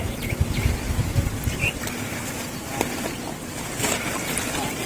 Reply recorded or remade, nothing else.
recorded